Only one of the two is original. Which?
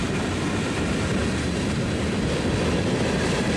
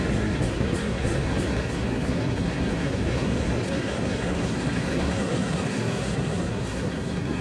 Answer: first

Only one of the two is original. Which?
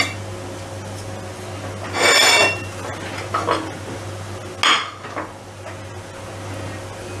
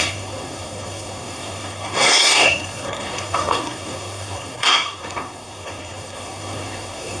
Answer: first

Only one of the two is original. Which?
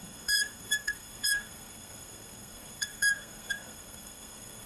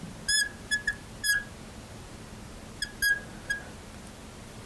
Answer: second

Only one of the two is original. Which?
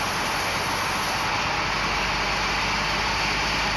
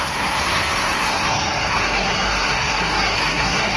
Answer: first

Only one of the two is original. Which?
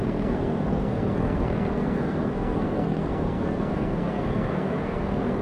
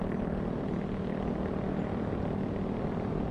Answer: second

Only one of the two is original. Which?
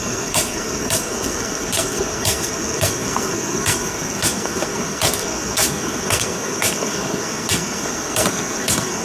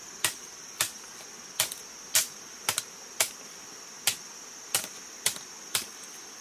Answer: second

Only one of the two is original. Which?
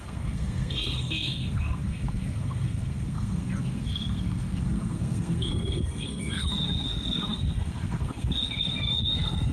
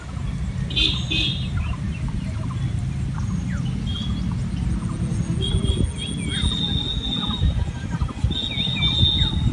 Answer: second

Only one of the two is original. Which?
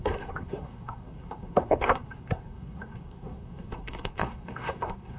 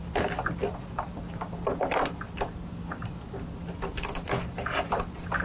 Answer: second